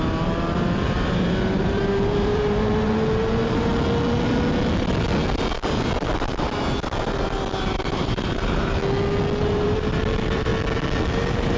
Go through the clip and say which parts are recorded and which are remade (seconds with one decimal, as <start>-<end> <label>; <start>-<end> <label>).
0.0-3.7 remade; 3.7-7.6 recorded; 7.6-8.8 remade; 8.8-9.4 recorded; 9.4-10.5 remade; 10.5-11.1 recorded; 11.1-11.6 remade

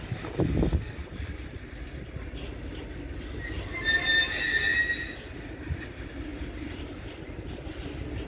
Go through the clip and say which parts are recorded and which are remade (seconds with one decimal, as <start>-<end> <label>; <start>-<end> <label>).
0.0-1.1 recorded; 1.1-1.7 remade; 1.7-6.3 recorded; 6.3-8.3 remade